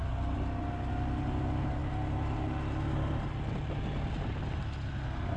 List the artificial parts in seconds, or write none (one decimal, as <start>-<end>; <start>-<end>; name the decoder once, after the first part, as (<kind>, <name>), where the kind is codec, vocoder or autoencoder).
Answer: none